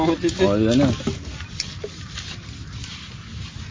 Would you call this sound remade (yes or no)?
no